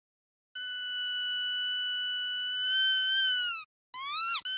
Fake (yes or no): no